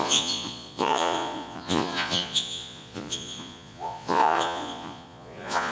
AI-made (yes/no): yes